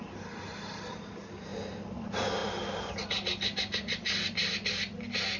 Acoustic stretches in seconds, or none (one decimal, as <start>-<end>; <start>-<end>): 0.0-5.4